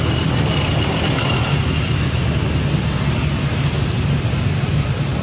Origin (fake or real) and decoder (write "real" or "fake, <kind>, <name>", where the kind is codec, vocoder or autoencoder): real